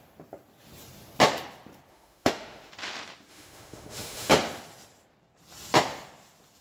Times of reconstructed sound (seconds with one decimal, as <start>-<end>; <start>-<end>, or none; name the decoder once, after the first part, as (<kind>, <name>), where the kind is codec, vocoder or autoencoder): 1.9-2.7 (autoencoder, DAC-VAE); 3.3-4.3